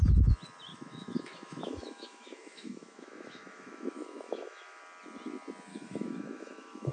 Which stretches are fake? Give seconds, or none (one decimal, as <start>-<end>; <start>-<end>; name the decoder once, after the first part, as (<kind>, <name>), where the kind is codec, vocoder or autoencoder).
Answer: 0.7-4.8 (autoencoder, DAC-VAE); 5.7-6.9